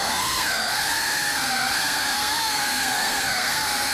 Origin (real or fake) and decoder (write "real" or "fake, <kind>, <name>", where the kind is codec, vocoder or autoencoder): fake, codec, SNAC